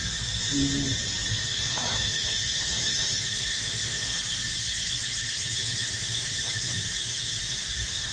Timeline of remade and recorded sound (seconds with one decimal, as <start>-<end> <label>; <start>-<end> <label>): 0.0-1.4 recorded; 1.4-4.2 remade; 4.2-5.1 recorded; 5.1-8.1 remade